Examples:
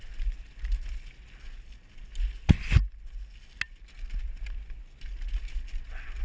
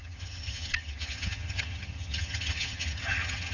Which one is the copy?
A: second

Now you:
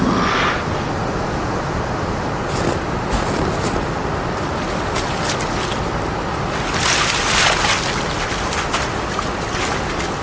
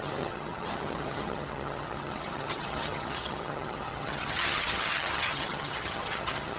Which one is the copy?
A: second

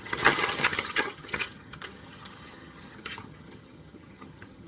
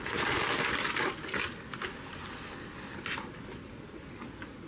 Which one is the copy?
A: first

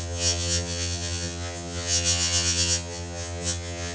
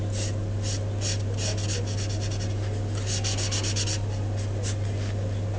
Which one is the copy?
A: first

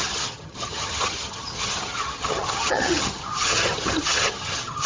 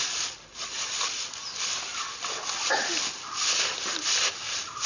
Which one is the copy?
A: first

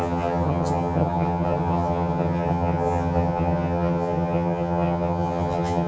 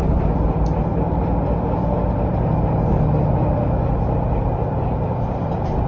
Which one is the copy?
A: first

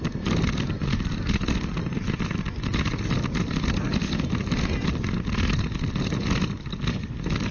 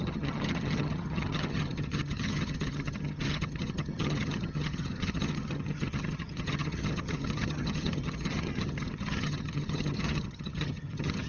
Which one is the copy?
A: second